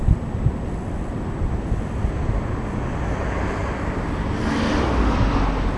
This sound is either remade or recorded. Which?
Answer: recorded